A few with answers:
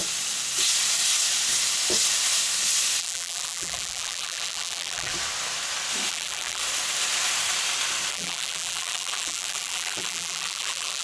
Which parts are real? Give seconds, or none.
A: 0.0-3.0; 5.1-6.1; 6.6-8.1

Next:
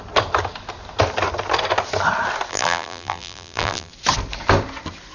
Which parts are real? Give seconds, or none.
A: 0.0-2.5; 3.9-5.1

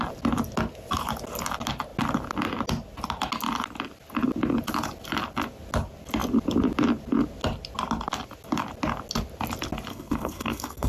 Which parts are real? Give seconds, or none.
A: 0.0-9.9